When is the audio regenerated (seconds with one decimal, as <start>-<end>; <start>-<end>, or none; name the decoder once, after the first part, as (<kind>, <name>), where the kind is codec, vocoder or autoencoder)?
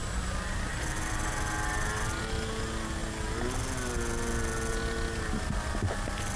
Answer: 0.0-3.0 (vocoder, BigVGAN v2); 4.7-6.4